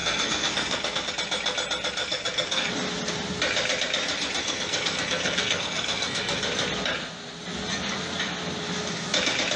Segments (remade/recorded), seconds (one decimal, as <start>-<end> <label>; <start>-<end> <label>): 0.0-1.1 remade; 1.1-2.0 recorded; 2.0-2.7 remade; 2.7-4.4 recorded; 4.4-6.4 remade; 6.4-9.6 recorded

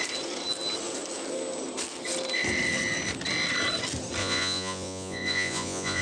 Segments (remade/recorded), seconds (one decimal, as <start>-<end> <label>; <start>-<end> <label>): 0.0-4.2 recorded; 4.2-6.0 remade

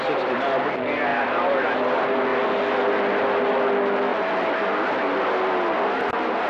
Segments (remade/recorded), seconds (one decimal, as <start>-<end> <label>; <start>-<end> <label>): 0.0-1.1 recorded; 1.1-1.7 remade; 1.7-4.1 recorded; 4.1-4.9 remade; 4.9-6.5 recorded

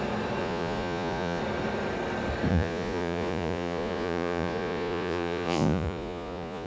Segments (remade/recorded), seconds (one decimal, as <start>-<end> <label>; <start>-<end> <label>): 0.0-0.4 recorded; 0.4-1.4 remade; 1.4-2.5 recorded; 2.5-6.7 remade

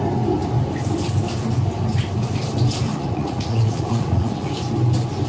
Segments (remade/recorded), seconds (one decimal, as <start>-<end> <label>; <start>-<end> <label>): 0.0-2.9 recorded; 2.9-4.5 remade; 4.5-5.3 recorded

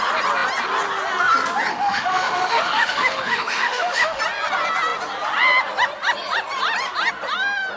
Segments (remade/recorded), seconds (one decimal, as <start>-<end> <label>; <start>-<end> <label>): 0.0-1.7 recorded; 1.7-4.2 remade; 4.2-7.8 recorded